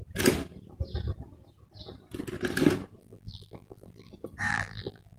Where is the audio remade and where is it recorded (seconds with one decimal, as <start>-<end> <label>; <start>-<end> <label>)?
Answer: 0.0-3.0 recorded; 3.0-4.1 remade; 4.1-4.5 recorded; 4.5-5.2 remade